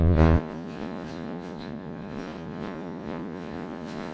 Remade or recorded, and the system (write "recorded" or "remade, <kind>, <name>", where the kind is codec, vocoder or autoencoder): remade, vocoder, Vocos